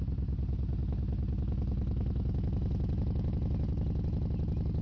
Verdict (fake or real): real